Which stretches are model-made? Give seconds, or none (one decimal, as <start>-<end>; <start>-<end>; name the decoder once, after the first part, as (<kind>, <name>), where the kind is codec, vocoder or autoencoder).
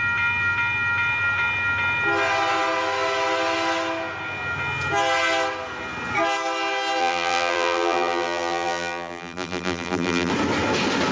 7.0-10.3 (vocoder, BigVGAN v2)